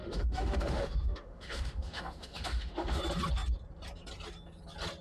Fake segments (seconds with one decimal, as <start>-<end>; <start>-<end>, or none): 0.0-3.0